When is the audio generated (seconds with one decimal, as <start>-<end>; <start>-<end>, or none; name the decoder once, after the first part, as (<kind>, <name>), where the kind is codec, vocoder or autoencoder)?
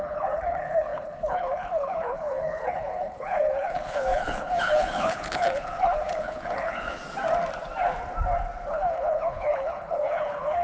0.0-7.0 (codec, HILCodec); 8.7-10.6